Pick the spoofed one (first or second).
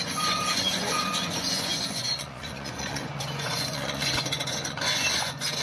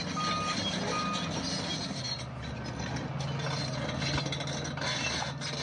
first